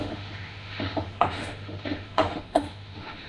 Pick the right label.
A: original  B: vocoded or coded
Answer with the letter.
B